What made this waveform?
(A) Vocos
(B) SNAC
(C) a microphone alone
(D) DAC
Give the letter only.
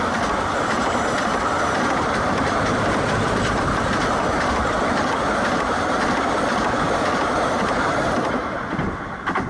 C